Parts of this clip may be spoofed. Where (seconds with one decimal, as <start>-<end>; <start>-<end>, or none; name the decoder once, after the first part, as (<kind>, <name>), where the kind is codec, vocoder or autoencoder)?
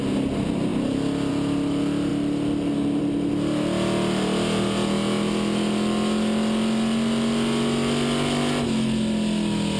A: none